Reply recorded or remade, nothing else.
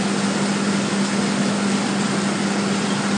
recorded